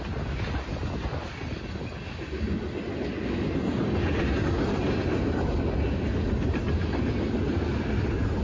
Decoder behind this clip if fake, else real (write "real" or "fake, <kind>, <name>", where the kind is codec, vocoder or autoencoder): real